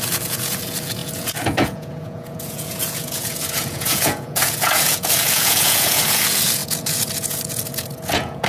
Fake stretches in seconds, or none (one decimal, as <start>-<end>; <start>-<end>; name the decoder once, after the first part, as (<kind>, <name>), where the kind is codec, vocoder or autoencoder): 0.0-8.5 (vocoder, Vocos)